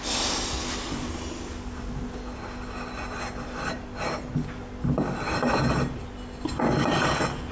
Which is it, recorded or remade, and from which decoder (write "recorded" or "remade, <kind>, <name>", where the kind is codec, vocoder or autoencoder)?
recorded